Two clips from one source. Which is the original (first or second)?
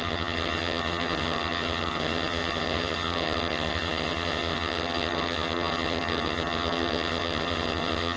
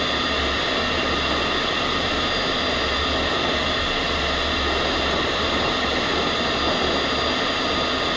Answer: second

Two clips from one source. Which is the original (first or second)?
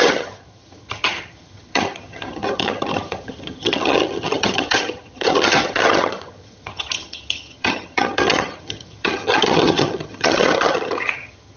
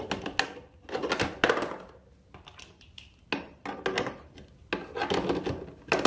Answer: second